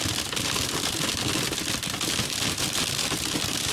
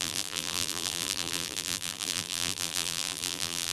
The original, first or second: first